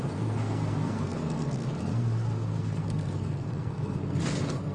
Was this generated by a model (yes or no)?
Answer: yes